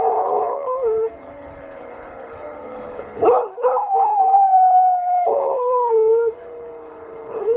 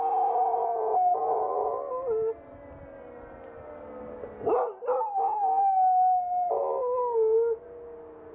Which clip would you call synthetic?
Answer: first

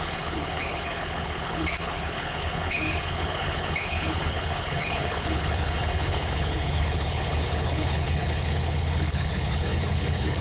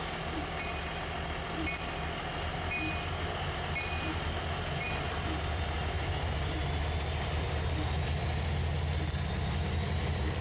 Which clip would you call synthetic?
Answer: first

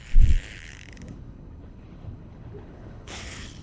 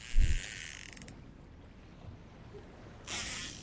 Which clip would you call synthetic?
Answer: first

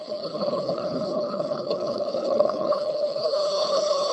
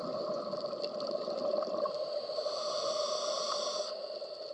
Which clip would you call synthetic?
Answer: first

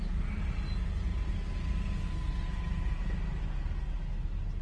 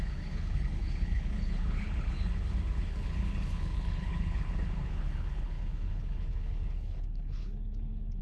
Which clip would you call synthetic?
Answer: second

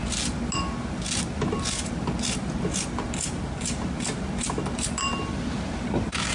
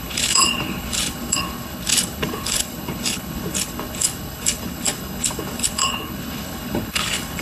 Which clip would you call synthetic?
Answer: second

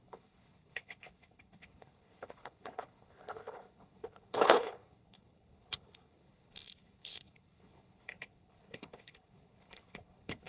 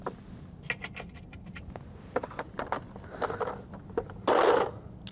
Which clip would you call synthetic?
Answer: first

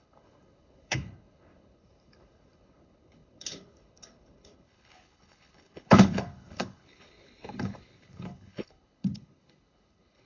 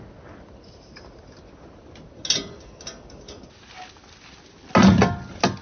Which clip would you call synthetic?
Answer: first